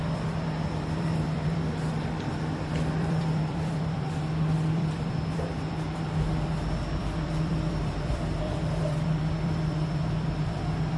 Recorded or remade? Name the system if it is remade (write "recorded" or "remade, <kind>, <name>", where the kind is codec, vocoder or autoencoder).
remade, vocoder, BigVGAN v2